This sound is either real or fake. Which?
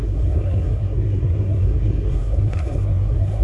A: fake